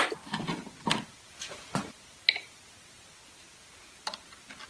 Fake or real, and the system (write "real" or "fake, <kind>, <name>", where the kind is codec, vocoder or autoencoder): real